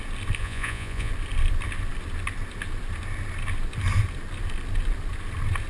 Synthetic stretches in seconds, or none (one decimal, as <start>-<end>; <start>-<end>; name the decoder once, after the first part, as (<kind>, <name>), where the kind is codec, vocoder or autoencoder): 0.4-1.1 (vocoder, Vocos)